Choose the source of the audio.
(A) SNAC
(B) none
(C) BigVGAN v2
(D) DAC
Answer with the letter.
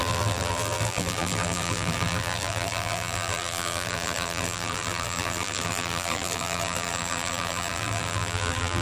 C